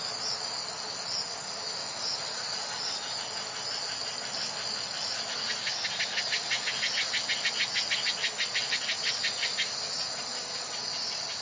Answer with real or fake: real